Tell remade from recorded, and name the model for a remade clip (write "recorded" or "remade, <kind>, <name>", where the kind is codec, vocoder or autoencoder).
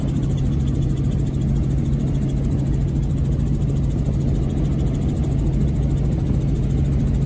recorded